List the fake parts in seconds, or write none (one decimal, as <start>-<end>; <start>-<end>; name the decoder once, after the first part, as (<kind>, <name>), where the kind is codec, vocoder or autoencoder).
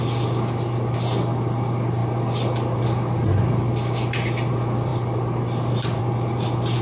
none